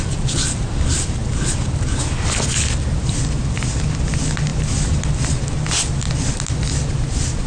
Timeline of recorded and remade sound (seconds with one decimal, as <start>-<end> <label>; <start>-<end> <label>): 0.0-4.5 recorded; 4.5-5.1 remade; 5.1-7.5 recorded